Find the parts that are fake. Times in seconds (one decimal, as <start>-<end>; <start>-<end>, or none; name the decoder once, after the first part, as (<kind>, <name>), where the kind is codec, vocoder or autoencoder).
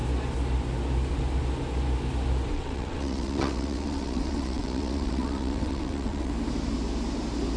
2.5-6.3 (vocoder, WaveNeXt)